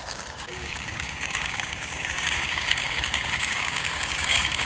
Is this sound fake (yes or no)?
yes